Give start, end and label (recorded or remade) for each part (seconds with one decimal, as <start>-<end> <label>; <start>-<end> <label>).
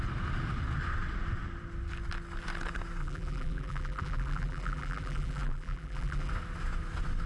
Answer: 0.0-3.0 recorded; 3.0-6.3 remade; 6.3-7.3 recorded